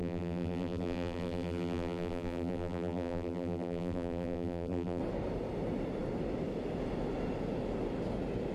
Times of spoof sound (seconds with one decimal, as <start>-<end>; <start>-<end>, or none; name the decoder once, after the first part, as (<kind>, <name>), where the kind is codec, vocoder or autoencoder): 0.0-5.0 (vocoder, BigVGAN v2)